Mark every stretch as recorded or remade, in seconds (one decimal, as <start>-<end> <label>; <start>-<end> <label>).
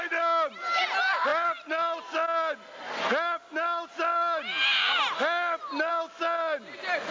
0.0-7.1 recorded